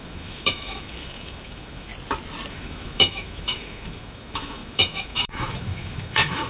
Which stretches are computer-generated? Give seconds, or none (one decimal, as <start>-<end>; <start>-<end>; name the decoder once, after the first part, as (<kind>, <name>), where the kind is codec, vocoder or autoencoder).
0.0-1.9 (autoencoder, DAC-VAE); 2.5-6.5